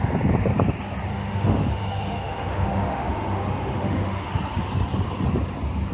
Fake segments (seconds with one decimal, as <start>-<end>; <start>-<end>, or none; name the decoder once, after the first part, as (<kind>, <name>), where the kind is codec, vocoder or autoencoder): 1.1-4.3 (autoencoder, DAC-VAE)